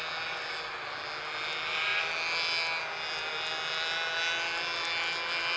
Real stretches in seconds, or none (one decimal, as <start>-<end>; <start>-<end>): 0.0-5.6